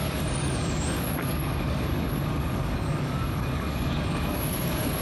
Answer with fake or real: fake